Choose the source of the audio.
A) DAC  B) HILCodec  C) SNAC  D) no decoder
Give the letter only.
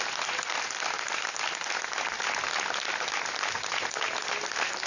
D